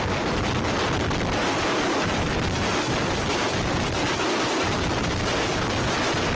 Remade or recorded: remade